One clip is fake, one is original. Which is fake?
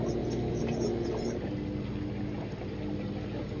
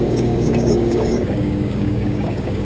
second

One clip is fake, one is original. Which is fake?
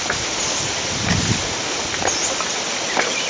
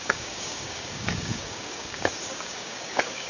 second